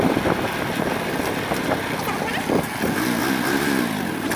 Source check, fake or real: real